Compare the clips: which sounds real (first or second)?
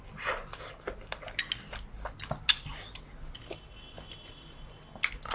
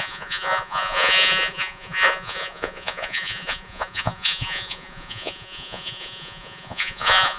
first